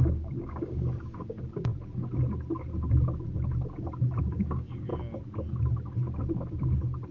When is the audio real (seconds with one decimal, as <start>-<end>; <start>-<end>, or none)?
1.7-4.2; 4.9-7.1